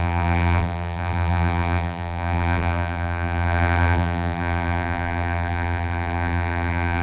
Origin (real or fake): fake